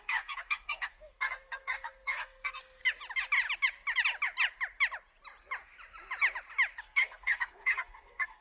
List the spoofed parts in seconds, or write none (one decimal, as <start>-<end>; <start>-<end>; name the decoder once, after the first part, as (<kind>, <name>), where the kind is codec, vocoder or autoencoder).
0.0-2.8 (codec, SNAC); 6.8-8.4